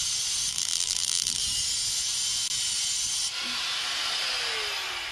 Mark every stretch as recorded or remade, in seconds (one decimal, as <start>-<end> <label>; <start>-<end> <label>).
0.0-0.5 recorded; 0.5-1.4 remade; 1.4-5.1 recorded